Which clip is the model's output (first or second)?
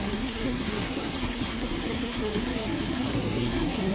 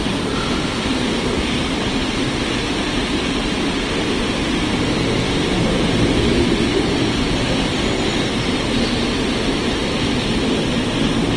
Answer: first